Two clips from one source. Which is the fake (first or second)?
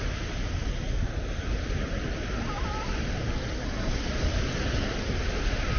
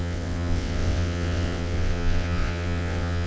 second